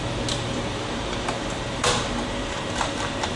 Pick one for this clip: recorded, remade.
remade